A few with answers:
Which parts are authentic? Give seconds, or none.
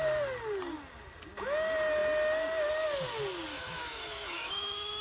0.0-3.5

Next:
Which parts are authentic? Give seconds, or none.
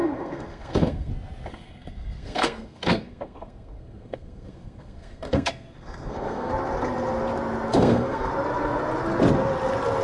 1.1-1.5; 6.5-7.7; 8.3-10.0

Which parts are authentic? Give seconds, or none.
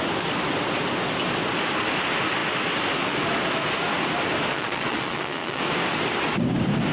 0.0-4.5; 5.6-6.9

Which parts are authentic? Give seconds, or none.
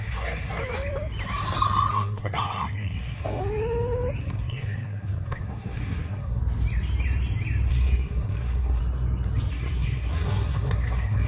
0.6-1.9; 3.4-4.2; 6.4-7.7; 8.8-9.5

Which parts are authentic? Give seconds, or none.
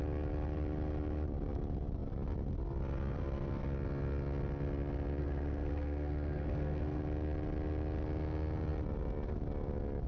0.0-5.2; 7.0-10.1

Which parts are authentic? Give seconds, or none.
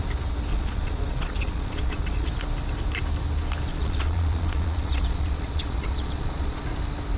0.0-0.5; 2.3-3.7; 6.6-7.2